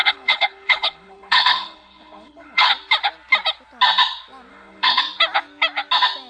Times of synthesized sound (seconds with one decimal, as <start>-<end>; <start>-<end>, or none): 0.0-2.7; 4.5-5.0